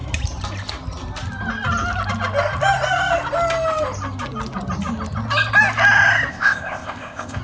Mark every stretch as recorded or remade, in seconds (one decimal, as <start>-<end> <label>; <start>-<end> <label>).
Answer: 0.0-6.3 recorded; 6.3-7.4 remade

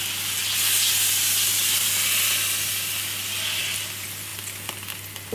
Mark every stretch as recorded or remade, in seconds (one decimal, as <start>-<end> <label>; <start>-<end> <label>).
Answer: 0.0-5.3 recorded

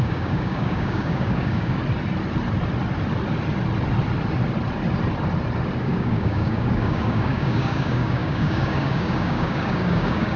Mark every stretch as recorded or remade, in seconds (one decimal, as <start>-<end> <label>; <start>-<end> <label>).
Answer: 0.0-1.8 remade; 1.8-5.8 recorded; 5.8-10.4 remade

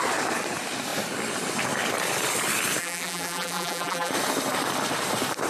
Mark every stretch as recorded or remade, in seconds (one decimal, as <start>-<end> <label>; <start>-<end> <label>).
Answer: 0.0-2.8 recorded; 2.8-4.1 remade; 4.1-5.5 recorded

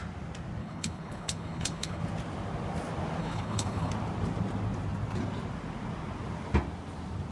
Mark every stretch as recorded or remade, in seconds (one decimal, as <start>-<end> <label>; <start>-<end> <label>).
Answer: 0.0-0.6 recorded; 0.6-2.0 remade; 2.0-3.2 recorded; 3.2-3.9 remade; 3.9-7.3 recorded

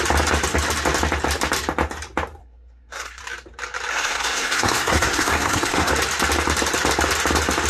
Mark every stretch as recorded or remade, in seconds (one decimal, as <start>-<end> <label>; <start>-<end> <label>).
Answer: 0.0-2.4 recorded; 2.4-3.2 remade; 3.2-3.9 recorded; 3.9-5.9 remade; 5.9-7.7 recorded